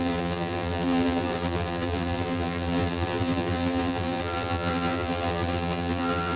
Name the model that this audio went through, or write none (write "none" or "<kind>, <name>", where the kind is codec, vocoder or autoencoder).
vocoder, BigVGAN v2